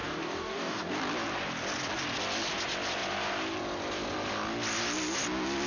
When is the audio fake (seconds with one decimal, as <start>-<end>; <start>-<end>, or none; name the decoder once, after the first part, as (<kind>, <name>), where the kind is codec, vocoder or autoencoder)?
0.0-1.0 (codec, DAC)